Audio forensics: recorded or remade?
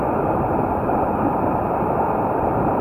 remade